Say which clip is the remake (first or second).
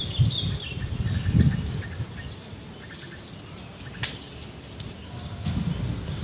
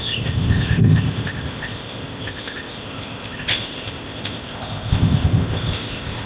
second